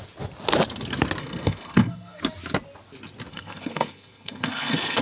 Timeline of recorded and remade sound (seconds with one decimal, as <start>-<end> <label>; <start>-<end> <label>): 0.0-1.2 recorded; 1.2-2.2 remade; 2.2-3.3 recorded; 3.3-5.0 remade